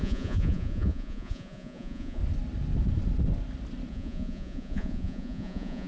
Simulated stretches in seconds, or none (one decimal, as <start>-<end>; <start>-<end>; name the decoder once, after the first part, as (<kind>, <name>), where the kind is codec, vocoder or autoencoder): 0.0-2.2 (vocoder, Vocos); 3.9-5.9